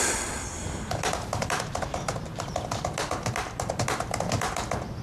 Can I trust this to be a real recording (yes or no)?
yes